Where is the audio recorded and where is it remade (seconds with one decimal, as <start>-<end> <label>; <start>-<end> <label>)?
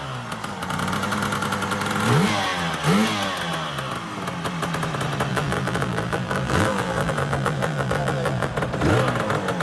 0.0-5.3 recorded; 5.3-8.5 remade; 8.5-9.6 recorded